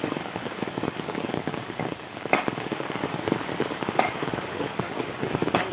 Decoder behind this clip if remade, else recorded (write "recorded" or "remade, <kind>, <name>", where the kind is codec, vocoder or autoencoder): remade, codec, DAC